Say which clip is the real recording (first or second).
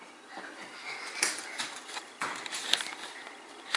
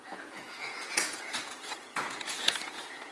first